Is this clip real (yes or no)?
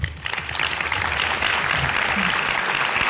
yes